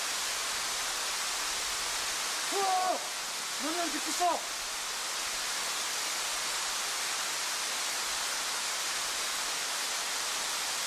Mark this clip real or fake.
real